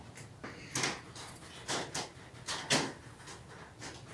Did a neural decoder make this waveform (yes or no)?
no